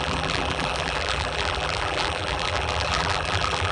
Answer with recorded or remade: remade